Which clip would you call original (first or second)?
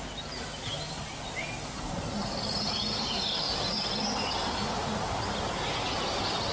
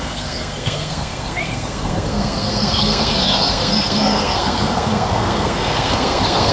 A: first